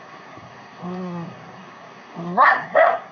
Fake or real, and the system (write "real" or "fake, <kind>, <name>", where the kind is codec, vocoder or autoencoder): fake, codec, SNAC